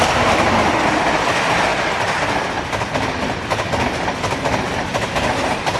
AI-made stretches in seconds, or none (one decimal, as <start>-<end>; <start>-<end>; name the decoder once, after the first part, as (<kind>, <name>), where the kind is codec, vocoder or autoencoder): none